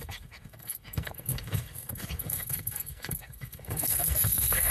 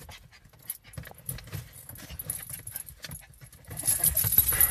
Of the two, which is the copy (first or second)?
first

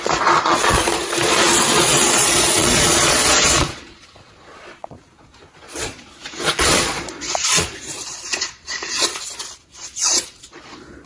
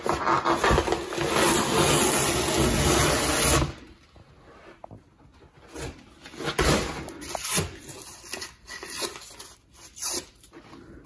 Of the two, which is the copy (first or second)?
first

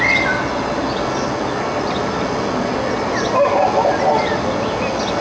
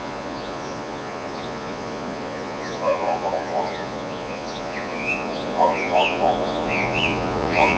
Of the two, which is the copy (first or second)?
second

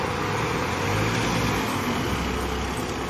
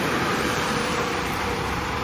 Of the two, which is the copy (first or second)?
second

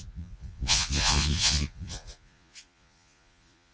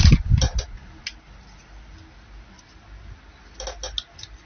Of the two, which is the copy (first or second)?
first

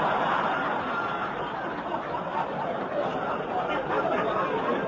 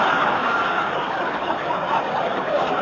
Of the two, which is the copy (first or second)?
second